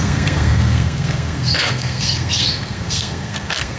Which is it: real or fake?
fake